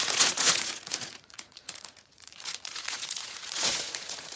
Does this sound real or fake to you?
fake